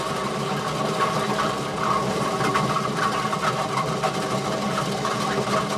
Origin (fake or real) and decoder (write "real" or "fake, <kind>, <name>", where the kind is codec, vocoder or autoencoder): real